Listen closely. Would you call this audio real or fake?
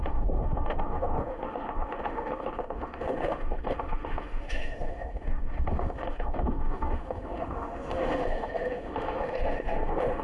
fake